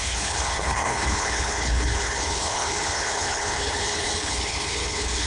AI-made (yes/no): yes